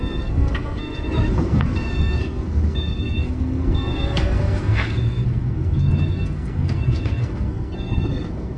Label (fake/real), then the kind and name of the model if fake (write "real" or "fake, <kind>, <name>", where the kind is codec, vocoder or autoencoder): fake, codec, SNAC